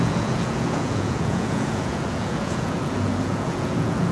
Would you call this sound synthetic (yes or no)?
yes